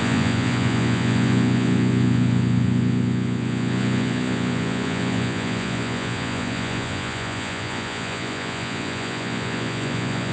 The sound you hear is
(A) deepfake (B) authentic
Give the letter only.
A